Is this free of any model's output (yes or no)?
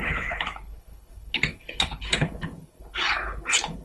no